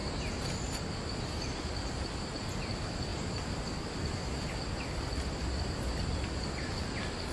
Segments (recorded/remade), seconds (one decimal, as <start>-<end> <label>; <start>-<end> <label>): 0.0-7.3 recorded